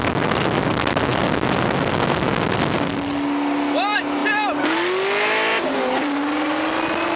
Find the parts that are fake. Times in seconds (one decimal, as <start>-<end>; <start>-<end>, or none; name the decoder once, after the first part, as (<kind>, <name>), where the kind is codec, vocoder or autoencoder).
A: none